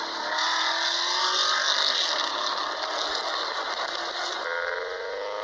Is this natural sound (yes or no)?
yes